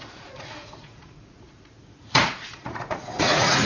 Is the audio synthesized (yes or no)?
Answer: yes